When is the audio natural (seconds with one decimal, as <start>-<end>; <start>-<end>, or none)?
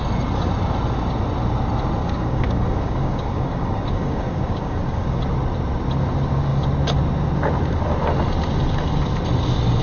0.0-2.0; 5.2-9.8